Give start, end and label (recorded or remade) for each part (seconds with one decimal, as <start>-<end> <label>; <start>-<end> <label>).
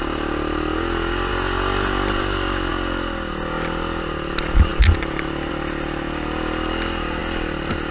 0.0-7.9 recorded